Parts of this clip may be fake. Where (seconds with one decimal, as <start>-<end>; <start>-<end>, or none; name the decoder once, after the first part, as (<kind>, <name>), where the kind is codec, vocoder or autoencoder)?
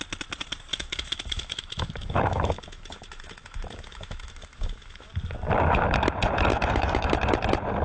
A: 0.7-5.1 (autoencoder, DAC-VAE); 6.5-7.1